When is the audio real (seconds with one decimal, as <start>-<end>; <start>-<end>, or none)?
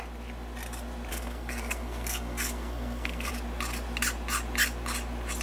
0.0-1.1; 3.3-5.4